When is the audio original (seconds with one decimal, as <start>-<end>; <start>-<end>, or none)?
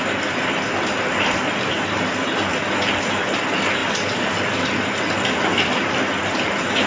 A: 0.0-6.9